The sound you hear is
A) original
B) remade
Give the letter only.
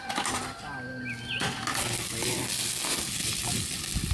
A